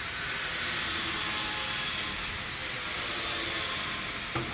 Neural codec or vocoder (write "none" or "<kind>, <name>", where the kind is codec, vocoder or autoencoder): none